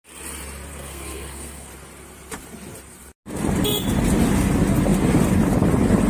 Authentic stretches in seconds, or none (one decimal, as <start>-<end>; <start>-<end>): 0.0-0.7; 1.7-6.1